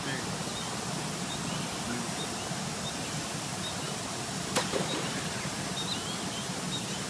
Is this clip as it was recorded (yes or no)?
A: yes